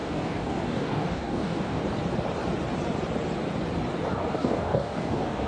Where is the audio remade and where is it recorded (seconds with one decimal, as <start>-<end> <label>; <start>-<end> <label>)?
0.0-1.8 remade; 1.8-4.1 recorded; 4.1-5.5 remade